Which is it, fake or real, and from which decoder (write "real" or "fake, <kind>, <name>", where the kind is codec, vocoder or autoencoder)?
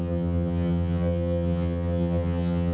fake, vocoder, HiFi-GAN